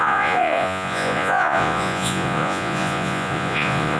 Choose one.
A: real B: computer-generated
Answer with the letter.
B